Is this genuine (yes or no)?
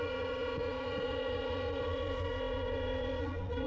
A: no